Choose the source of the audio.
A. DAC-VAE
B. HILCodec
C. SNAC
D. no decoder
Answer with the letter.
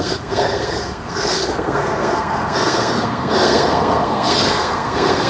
C